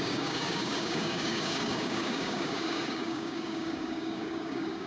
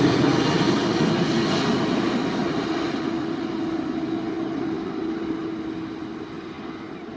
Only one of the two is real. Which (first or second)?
second